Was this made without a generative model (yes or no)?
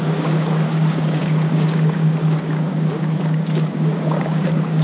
no